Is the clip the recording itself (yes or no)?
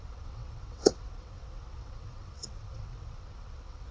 no